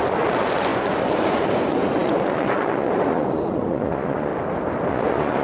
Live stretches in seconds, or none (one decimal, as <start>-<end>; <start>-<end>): 4.3-4.9